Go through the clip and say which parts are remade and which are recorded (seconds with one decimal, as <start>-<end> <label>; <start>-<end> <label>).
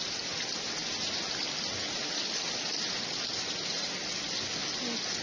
0.0-5.2 recorded